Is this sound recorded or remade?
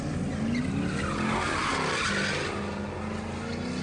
recorded